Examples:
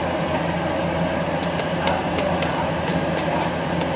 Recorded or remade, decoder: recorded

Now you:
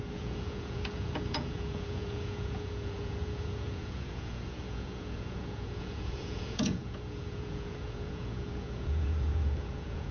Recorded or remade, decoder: remade, vocoder, Vocos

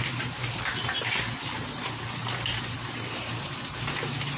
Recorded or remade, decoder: recorded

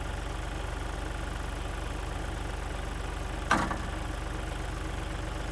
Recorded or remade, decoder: recorded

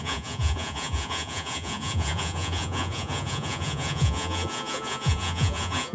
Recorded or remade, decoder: remade, vocoder, Vocos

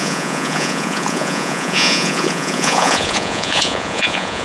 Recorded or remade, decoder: remade, vocoder, Vocos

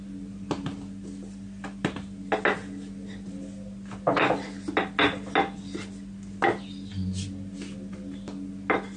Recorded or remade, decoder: recorded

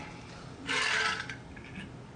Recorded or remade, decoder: recorded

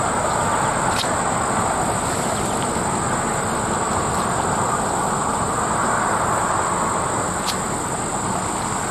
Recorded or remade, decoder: recorded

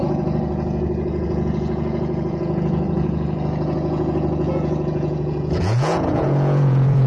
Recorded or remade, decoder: remade, vocoder, Vocos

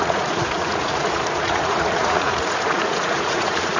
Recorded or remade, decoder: remade, vocoder, Vocos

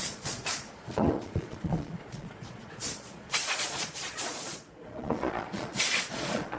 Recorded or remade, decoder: remade, vocoder, Vocos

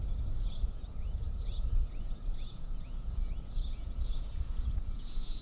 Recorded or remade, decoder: remade, vocoder, Vocos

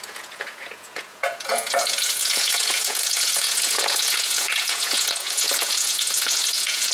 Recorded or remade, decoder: remade, vocoder, Vocos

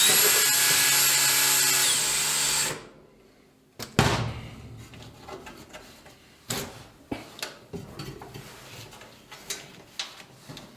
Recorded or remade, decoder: recorded